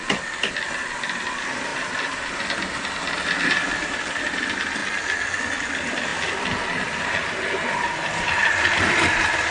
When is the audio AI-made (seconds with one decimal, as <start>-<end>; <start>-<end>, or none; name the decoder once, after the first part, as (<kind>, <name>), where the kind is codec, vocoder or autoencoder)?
0.0-4.8 (vocoder, BigVGAN v2); 5.5-9.5